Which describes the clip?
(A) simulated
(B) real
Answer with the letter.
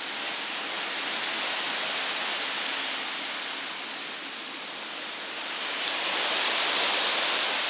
B